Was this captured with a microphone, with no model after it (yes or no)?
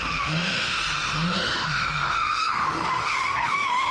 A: no